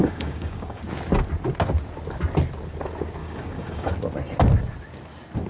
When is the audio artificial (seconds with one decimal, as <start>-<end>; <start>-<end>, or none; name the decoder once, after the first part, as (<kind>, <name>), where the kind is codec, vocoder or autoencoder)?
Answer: 0.0-0.8 (codec, DAC); 3.2-3.9